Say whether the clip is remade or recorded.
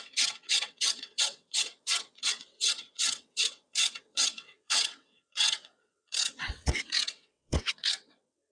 remade